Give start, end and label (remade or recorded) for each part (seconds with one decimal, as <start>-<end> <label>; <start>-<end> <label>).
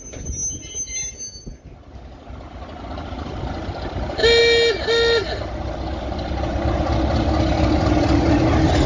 0.0-8.9 recorded